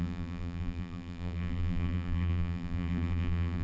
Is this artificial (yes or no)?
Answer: yes